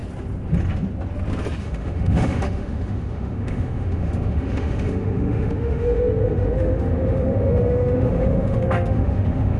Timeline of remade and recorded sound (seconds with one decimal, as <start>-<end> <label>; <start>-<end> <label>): 0.0-1.6 recorded; 1.6-9.6 remade